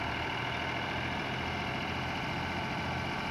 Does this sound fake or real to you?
real